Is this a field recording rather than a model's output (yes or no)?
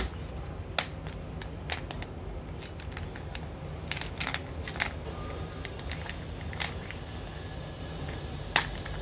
yes